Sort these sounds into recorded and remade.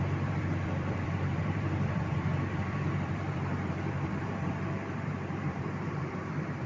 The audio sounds remade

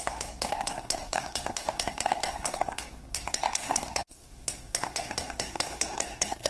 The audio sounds remade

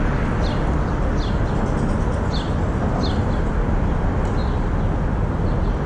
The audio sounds recorded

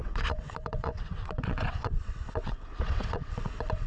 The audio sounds remade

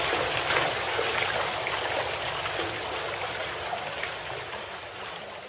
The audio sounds recorded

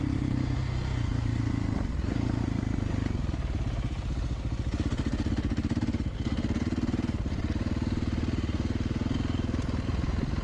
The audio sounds recorded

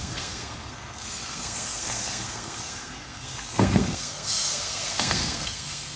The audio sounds remade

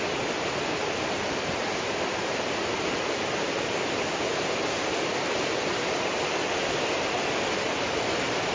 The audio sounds recorded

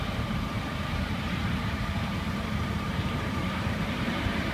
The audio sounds remade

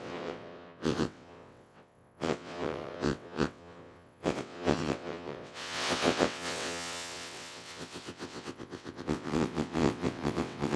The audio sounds remade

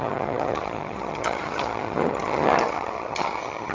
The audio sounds remade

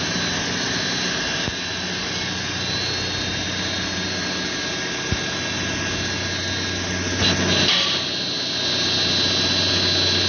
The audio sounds recorded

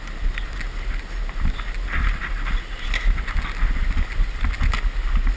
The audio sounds recorded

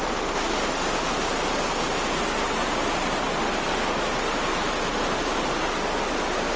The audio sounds recorded